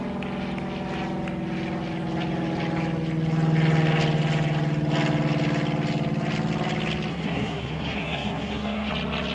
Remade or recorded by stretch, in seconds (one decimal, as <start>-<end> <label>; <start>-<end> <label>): 0.0-7.1 recorded; 7.1-8.9 remade; 8.9-9.3 recorded